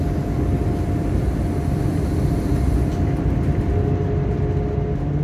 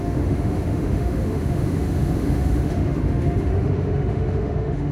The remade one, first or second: second